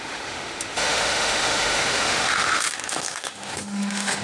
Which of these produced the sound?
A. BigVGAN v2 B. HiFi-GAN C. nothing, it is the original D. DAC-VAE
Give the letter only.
D